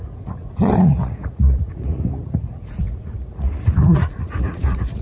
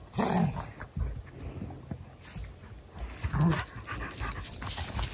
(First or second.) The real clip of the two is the second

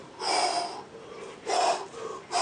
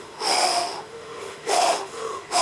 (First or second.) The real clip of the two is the first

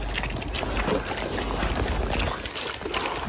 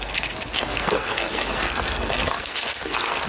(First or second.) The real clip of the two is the first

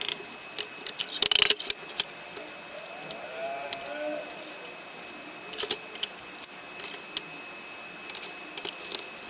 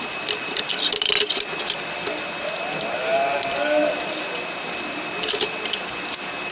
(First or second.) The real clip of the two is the first